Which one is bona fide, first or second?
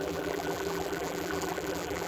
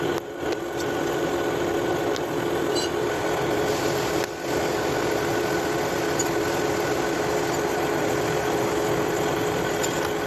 second